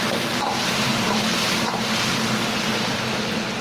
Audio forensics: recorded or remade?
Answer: recorded